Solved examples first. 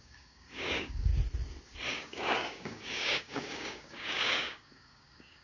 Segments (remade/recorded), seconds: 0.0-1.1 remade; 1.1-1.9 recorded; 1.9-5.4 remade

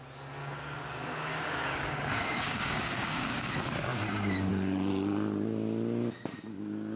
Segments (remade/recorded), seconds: 0.0-0.4 recorded; 0.4-3.5 remade; 3.5-7.0 recorded

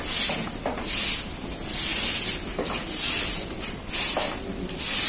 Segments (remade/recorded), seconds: 0.0-5.1 recorded

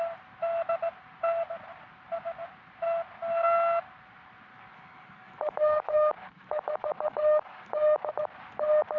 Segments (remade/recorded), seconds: 0.0-4.5 recorded; 4.5-8.1 remade; 8.1-9.0 recorded

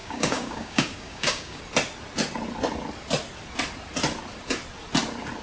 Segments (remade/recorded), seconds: 0.0-1.6 remade; 1.6-5.4 recorded

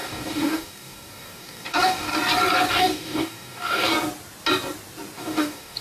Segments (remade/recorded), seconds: 0.0-2.1 remade; 2.1-2.7 recorded; 2.7-3.9 remade; 3.9-5.2 recorded; 5.2-5.8 remade